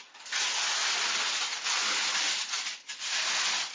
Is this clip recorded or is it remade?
recorded